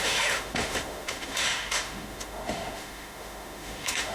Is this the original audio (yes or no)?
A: no